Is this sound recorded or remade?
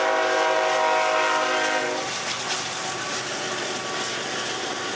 recorded